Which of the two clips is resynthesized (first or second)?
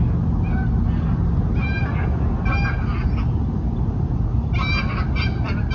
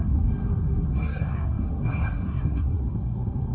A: second